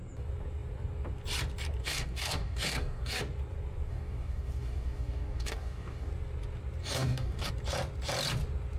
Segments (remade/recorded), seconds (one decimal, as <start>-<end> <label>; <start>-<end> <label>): 0.0-1.8 recorded; 1.8-3.2 remade; 3.2-3.9 recorded; 3.9-6.1 remade; 6.1-6.8 recorded; 6.8-7.5 remade; 7.5-8.8 recorded